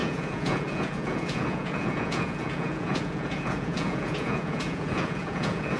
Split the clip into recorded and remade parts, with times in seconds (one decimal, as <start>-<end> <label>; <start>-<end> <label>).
0.0-5.8 remade

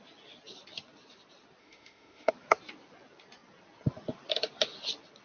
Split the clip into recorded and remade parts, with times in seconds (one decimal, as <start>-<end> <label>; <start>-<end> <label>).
0.0-1.6 recorded; 1.6-2.3 remade; 2.3-5.2 recorded

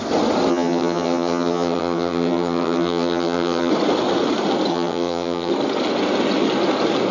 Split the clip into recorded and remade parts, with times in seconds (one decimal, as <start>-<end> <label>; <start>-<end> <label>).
0.0-0.5 recorded; 0.5-3.7 remade; 3.7-4.7 recorded; 4.7-5.5 remade; 5.5-7.1 recorded